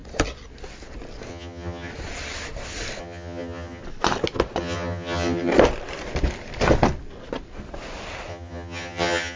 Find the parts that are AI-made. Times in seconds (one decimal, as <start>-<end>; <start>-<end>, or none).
1.3-1.9; 3.0-3.8; 4.6-5.5; 8.3-9.4